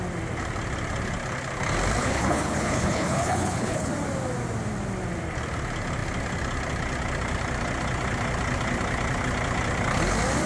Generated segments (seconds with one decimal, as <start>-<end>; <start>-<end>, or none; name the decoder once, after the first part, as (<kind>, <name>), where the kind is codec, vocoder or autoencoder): 2.0-3.9 (codec, HILCodec)